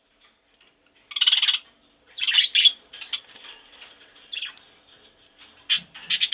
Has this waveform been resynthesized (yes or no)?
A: no